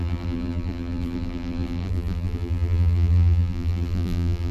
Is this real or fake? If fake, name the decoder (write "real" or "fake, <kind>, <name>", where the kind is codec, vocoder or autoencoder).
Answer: fake, vocoder, BigVGAN v2